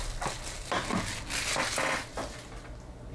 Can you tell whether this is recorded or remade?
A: recorded